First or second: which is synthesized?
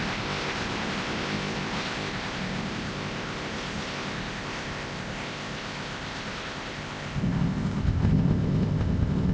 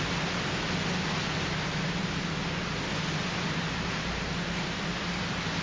first